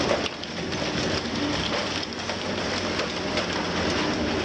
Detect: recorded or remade recorded